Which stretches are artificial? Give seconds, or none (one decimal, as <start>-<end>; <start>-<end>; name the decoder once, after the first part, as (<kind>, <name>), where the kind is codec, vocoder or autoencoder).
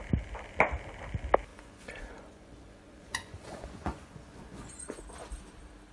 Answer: 1.5-5.0 (vocoder, Vocos)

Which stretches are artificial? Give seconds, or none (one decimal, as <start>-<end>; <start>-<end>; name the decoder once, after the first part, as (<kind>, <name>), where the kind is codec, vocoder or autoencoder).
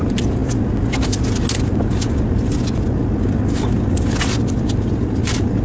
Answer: none